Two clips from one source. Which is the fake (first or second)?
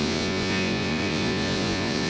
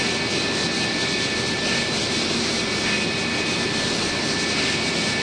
first